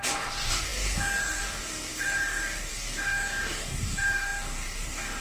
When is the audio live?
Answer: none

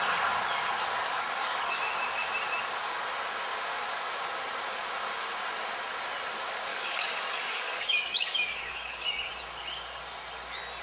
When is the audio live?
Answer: 0.0-1.0; 1.8-6.7; 9.3-10.8